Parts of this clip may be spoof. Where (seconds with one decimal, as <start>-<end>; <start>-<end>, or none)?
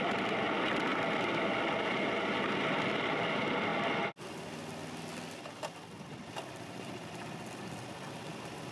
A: none